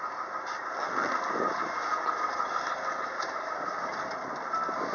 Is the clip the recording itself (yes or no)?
yes